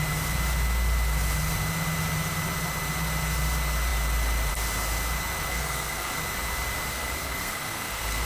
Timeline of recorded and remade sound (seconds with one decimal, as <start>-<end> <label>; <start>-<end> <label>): 0.0-5.5 recorded; 5.5-6.2 remade; 6.2-6.9 recorded; 6.9-8.3 remade